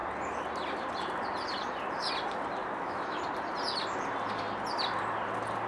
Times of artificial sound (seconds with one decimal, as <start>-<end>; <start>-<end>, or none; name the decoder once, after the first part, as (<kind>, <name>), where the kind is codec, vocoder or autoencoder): 2.6-3.2 (autoencoder, DAC-VAE)